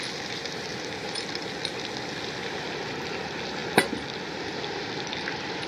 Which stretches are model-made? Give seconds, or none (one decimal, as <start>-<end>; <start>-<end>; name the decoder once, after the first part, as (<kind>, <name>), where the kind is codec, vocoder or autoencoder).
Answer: none